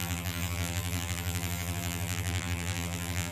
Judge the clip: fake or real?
fake